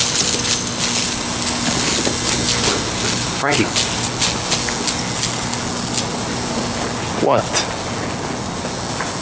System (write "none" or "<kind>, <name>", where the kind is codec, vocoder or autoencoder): none